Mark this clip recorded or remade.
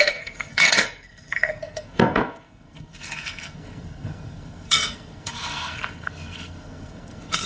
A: remade